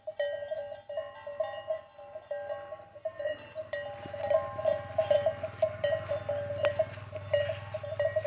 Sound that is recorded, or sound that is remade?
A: recorded